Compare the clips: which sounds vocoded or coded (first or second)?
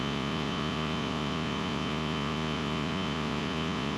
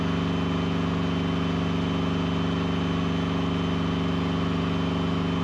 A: first